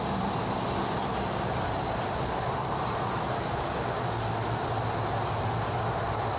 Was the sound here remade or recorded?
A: recorded